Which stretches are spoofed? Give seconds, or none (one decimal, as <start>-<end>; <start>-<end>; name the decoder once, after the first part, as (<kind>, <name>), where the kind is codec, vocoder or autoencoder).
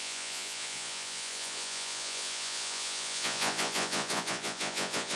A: 0.0-5.2 (vocoder, Vocos)